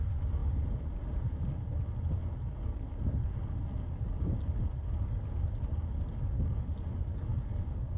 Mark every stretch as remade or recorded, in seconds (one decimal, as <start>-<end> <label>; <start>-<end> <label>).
0.0-7.3 recorded; 7.3-8.0 remade